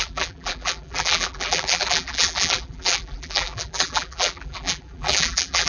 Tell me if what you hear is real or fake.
fake